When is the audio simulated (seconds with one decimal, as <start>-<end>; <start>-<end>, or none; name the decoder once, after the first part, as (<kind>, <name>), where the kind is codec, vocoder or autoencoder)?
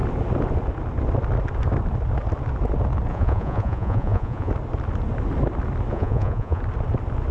3.1-4.5 (vocoder, Vocos); 5.9-6.6